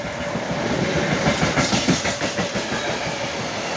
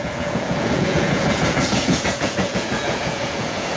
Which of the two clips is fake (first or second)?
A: second